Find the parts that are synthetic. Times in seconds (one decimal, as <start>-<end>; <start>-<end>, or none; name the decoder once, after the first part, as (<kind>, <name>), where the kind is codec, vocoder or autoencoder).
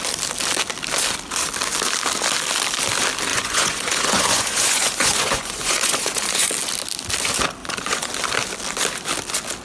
3.3-6.5 (vocoder, Vocos); 7.6-8.1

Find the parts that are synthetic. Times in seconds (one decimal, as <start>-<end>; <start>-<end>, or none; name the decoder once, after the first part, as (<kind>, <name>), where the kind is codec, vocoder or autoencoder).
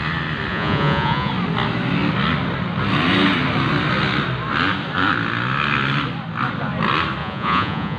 0.5-1.3 (vocoder, Vocos); 7.2-8.0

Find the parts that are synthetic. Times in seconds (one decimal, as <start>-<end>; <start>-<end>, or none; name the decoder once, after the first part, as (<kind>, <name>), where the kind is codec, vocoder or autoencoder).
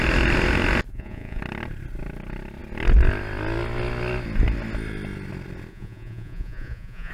0.9-1.4 (vocoder, Vocos); 5.7-7.1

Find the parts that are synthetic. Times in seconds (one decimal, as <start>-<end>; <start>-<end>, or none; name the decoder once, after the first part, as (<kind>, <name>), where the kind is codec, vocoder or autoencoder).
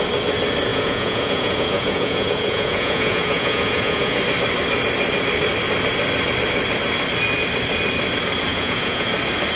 0.7-4.2 (vocoder, Vocos); 8.5-9.1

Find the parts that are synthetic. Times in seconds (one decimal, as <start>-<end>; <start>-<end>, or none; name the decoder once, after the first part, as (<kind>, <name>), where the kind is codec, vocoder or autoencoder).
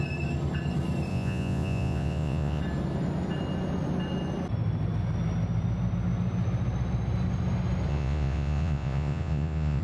1.1-2.6 (vocoder, Vocos); 7.9-9.8